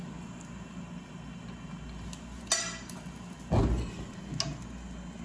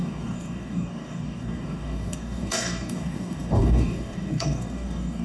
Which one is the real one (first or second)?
first